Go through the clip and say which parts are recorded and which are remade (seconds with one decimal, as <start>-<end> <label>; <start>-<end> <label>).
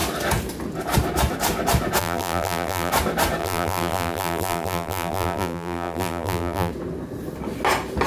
0.0-2.0 recorded; 2.0-2.9 remade; 2.9-3.4 recorded; 3.4-6.7 remade; 6.7-8.1 recorded